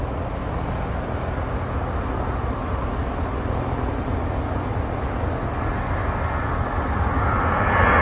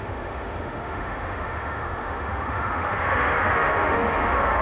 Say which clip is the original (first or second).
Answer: first